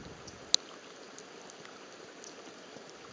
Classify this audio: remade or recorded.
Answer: recorded